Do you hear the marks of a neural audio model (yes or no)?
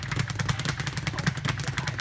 no